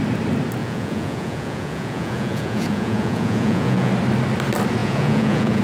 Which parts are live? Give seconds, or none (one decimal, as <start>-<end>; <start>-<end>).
0.0-0.6; 3.9-4.8